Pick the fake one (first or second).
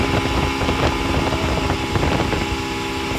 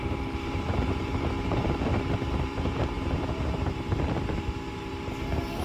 second